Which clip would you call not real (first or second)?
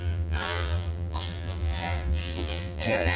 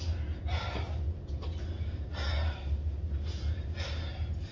first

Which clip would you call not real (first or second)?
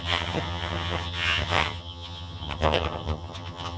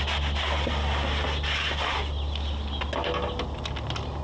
first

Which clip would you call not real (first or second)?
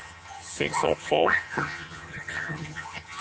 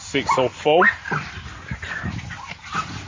first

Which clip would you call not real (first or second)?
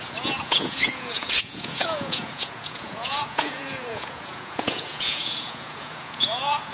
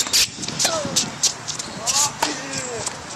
first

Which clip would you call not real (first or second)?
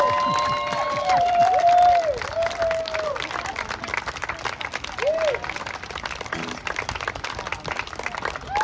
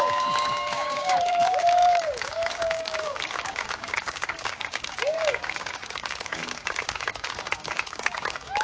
second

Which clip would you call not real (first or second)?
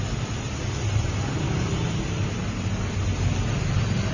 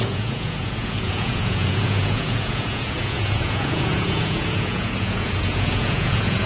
second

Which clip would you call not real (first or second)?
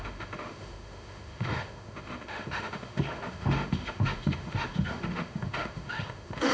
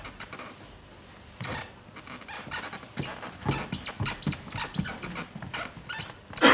first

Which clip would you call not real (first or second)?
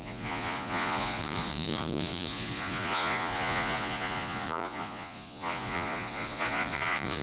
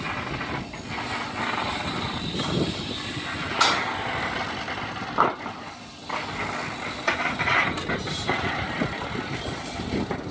first